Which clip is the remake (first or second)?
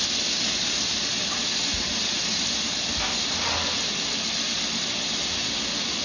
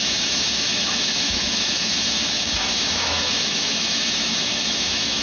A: second